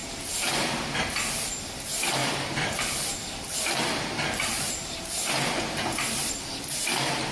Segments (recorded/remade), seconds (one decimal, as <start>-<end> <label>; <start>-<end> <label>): 0.0-1.5 remade; 1.5-2.2 recorded; 2.2-5.3 remade; 5.3-7.3 recorded